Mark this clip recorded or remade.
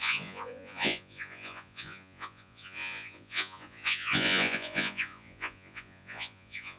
remade